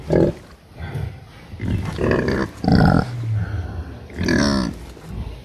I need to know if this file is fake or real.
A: real